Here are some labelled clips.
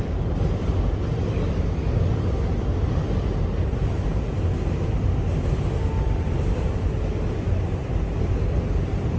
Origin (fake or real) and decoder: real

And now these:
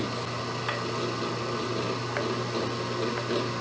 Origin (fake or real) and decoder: real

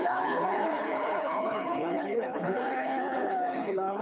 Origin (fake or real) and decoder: fake, codec, HILCodec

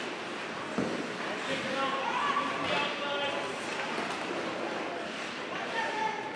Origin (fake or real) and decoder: fake, vocoder, BigVGAN v2